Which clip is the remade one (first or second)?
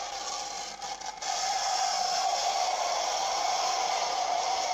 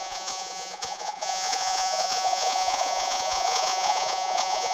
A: second